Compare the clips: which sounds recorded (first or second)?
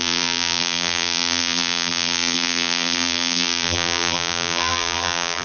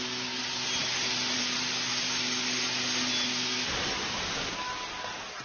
second